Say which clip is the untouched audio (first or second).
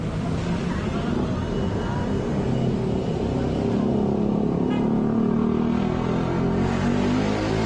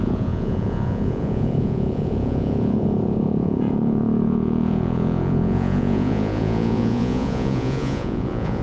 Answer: first